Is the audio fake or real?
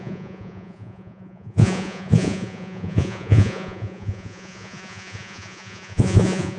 fake